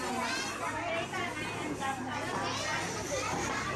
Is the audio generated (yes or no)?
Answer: no